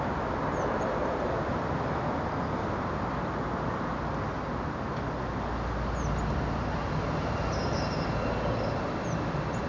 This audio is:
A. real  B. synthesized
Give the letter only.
A